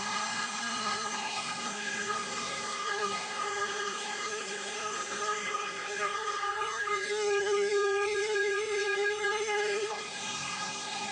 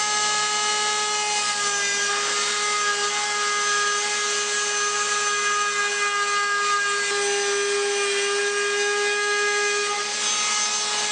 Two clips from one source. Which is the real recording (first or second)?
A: second